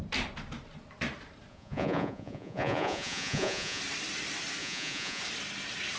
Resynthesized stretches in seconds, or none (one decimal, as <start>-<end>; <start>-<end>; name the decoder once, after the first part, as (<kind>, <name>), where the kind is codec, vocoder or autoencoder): 1.5-3.8 (vocoder, Vocos); 4.6-5.2